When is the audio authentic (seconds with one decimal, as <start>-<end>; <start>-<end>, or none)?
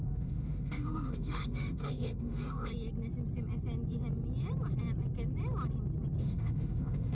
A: 2.7-6.2